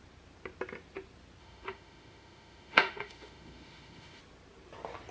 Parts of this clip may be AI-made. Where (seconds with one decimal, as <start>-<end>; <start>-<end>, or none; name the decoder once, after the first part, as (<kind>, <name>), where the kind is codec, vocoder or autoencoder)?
1.4-4.2 (autoencoder, DAC-VAE)